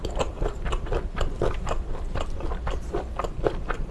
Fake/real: real